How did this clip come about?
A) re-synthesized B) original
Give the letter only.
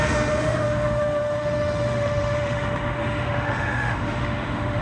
A